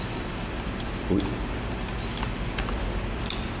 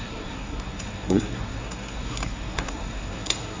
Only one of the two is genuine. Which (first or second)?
first